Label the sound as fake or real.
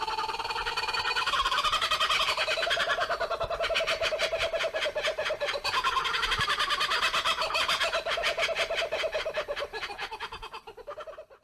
fake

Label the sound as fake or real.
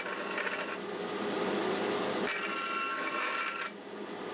real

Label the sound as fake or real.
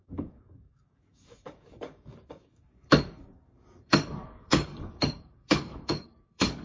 fake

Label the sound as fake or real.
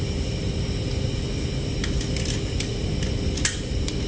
real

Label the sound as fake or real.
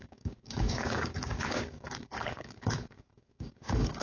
fake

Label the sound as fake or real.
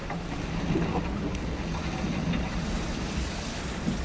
real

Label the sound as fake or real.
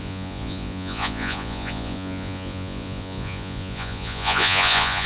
fake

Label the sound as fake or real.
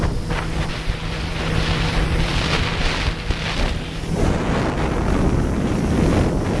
real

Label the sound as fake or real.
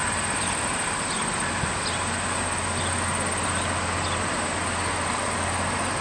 real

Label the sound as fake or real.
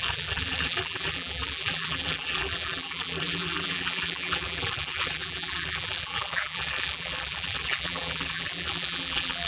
fake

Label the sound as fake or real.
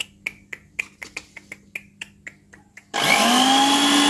real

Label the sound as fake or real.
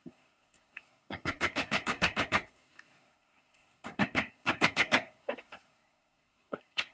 fake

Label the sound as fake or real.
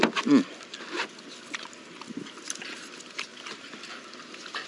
real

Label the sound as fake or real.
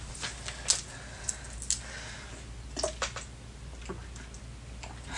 real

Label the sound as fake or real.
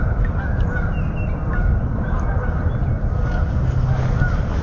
real